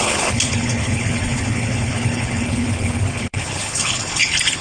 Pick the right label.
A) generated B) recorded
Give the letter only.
A